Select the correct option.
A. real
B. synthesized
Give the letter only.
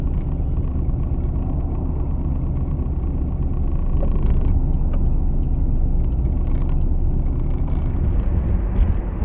A